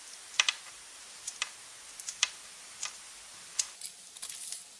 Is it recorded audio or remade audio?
recorded